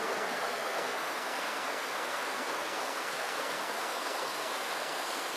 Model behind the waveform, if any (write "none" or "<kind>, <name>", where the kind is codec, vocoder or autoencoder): codec, SNAC